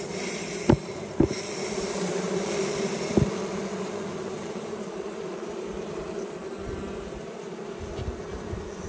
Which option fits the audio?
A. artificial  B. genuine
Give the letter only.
A